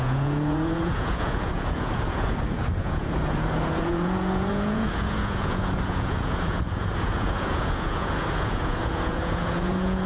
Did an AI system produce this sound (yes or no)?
yes